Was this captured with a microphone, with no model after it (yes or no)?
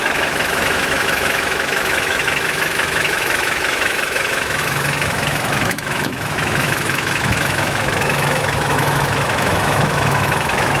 no